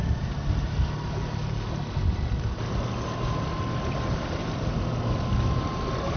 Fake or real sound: real